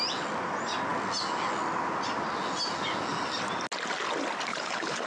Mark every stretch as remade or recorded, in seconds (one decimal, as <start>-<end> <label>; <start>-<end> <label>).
0.0-4.5 recorded; 4.5-5.1 remade